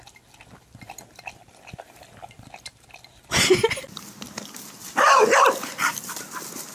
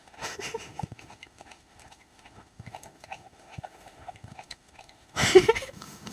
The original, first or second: first